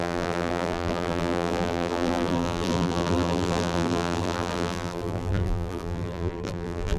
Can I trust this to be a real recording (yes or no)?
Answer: no